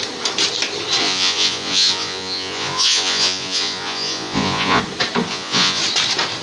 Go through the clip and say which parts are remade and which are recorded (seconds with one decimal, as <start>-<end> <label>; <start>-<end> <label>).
0.0-1.0 recorded; 1.0-4.8 remade; 4.8-5.3 recorded; 5.3-5.8 remade; 5.8-6.4 recorded